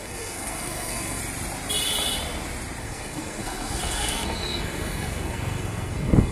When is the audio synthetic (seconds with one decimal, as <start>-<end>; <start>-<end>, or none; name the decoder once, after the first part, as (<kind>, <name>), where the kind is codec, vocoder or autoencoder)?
0.0-1.2 (codec, SNAC); 2.8-6.3